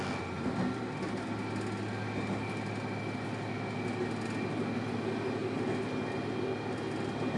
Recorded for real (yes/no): yes